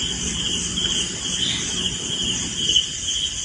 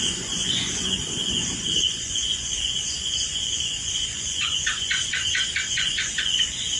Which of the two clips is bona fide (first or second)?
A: first